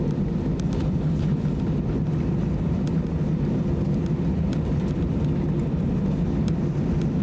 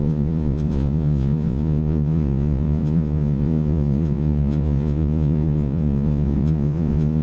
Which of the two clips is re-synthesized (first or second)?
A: second